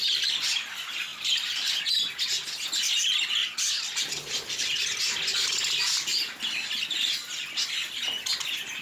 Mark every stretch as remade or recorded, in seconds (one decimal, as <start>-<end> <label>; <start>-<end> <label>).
0.0-1.1 recorded; 1.1-1.8 remade; 1.8-8.8 recorded